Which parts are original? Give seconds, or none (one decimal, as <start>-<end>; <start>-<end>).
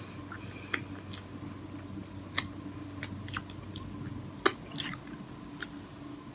0.0-6.3